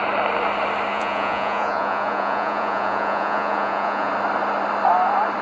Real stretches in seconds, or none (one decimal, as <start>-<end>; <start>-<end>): 0.0-0.9; 4.1-5.4